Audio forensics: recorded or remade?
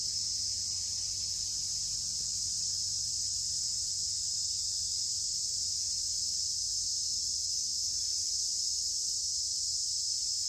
recorded